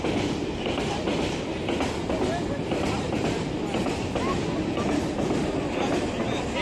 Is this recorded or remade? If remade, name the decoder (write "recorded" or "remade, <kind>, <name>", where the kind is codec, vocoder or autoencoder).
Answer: recorded